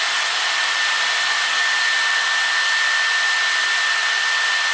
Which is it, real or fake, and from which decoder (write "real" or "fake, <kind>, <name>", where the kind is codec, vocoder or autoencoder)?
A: real